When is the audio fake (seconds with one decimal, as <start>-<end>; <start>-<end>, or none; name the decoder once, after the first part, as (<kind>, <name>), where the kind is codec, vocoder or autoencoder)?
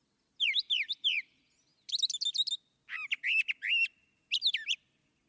none